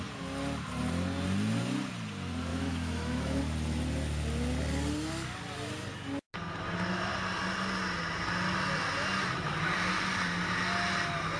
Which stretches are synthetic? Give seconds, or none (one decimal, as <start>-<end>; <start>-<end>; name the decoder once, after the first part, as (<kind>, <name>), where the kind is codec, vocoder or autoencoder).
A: 2.5-3.4 (autoencoder, DAC-VAE)